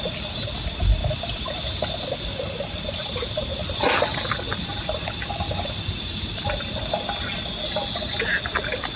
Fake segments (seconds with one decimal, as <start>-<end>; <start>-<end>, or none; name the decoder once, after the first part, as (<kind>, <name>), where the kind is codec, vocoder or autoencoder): 1.0-3.4 (vocoder, BigVGAN v2); 4.5-7.1